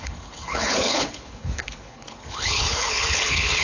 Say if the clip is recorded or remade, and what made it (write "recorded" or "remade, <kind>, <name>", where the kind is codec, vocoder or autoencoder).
remade, codec, HILCodec